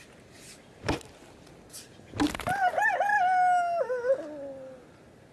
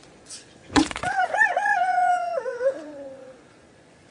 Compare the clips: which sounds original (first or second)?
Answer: first